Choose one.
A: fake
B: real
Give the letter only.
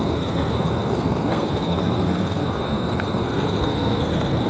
A